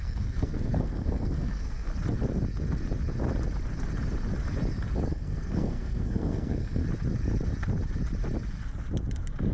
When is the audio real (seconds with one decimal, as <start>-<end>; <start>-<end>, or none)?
1.9-5.1; 6.8-9.5